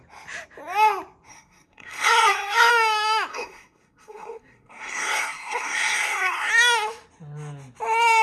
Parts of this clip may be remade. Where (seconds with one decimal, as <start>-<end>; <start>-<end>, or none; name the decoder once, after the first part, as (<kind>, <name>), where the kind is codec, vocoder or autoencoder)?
1.3-2.7 (codec, SNAC); 3.3-6.5